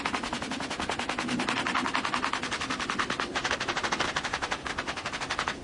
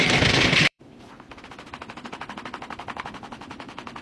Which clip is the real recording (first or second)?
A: first